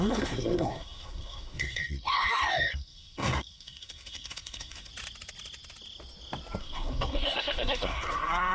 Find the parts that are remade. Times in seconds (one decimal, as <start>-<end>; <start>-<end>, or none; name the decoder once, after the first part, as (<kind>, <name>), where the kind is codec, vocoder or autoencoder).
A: 0.0-4.9 (codec, SNAC); 6.6-8.5

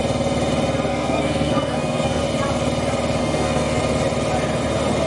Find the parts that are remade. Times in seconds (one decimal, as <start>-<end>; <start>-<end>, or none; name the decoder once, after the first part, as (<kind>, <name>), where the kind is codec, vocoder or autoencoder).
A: 0.9-2.2 (codec, SNAC); 3.2-3.8

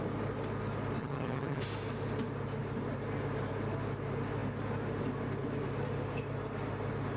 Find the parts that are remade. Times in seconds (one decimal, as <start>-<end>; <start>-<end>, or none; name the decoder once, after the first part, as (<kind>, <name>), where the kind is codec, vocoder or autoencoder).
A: 1.0-1.6 (vocoder, HiFi-GAN)

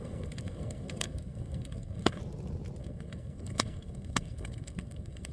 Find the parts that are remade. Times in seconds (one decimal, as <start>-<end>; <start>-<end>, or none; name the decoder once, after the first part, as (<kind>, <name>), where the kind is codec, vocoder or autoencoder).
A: 0.0-2.2 (codec, SNAC); 2.8-5.3